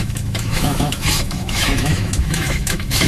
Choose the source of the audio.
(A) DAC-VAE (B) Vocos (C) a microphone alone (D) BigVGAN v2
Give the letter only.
A